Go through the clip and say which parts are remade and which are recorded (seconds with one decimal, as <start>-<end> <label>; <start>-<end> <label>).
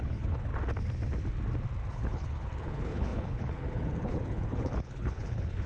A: 0.0-0.5 remade; 0.5-1.9 recorded; 1.9-5.7 remade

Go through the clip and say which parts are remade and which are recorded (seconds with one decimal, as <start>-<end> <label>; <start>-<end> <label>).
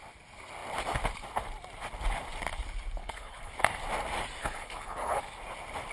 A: 0.0-3.0 recorded; 3.0-3.5 remade; 3.5-4.4 recorded; 4.4-5.2 remade; 5.2-5.9 recorded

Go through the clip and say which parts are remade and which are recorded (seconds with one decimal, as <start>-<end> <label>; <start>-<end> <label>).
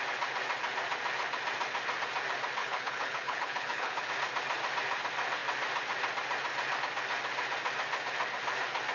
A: 0.0-2.6 recorded; 2.6-4.1 remade; 4.1-8.9 recorded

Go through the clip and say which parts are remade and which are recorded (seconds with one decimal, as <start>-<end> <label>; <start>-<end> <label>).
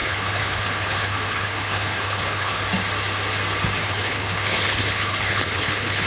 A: 0.0-2.6 remade; 2.6-3.8 recorded; 3.8-6.1 remade